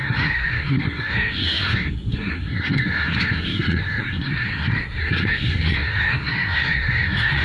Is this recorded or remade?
remade